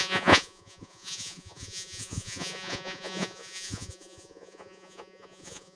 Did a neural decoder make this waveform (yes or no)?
yes